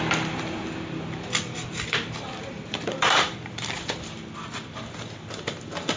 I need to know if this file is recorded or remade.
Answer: remade